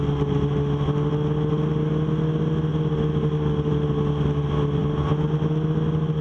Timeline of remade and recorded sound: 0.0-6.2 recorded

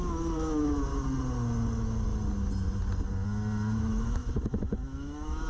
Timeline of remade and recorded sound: 0.0-0.9 remade; 0.9-3.8 recorded; 3.8-5.5 remade

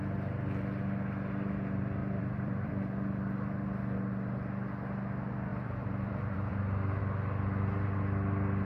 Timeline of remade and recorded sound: 0.0-2.0 recorded; 2.0-2.7 remade; 2.7-5.5 recorded; 5.5-7.0 remade; 7.0-8.6 recorded

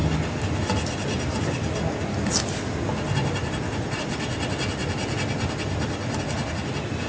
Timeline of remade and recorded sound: 0.0-7.1 recorded

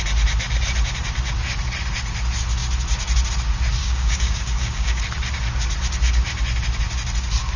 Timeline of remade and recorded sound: 0.0-3.8 recorded; 3.8-5.0 remade; 5.0-7.6 recorded

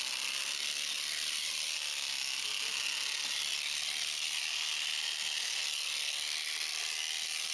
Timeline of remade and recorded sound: 0.0-7.5 recorded